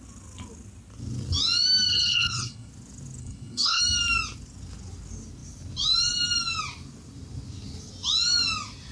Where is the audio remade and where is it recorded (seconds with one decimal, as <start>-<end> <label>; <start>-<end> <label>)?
0.0-1.9 recorded; 1.9-2.7 remade; 2.7-3.2 recorded; 3.2-3.8 remade; 3.8-8.9 recorded